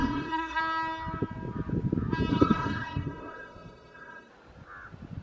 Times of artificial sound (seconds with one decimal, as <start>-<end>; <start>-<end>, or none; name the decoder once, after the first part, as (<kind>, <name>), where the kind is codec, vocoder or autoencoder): 0.0-0.6 (codec, SNAC); 2.3-4.3